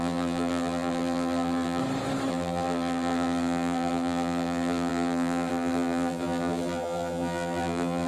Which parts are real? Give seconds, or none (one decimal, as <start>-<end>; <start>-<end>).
1.8-2.3